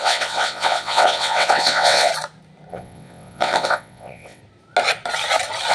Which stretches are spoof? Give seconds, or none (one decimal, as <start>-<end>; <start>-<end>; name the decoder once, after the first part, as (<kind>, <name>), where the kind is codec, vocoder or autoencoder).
0.0-2.1 (vocoder, WaveNeXt); 2.7-4.4